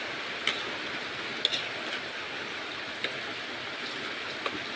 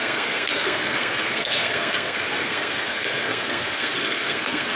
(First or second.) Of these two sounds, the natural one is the first